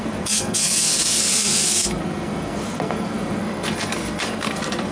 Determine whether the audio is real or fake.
fake